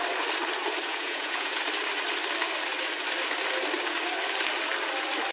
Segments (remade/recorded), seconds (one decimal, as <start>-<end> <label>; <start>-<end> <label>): 0.0-0.9 recorded; 0.9-1.6 remade; 1.6-5.3 recorded